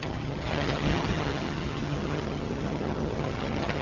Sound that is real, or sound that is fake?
fake